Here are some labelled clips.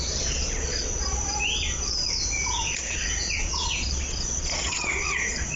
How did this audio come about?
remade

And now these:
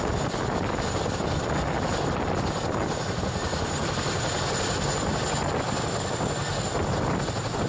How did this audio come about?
recorded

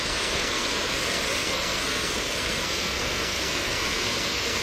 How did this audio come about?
remade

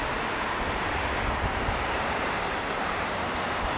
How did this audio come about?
remade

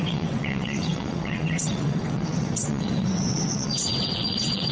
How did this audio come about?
remade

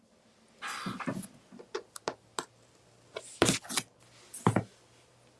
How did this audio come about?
recorded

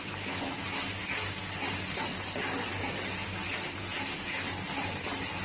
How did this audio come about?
recorded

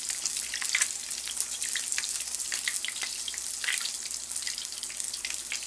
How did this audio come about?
recorded